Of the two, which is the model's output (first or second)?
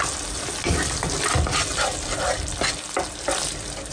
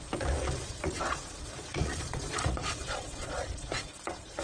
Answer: second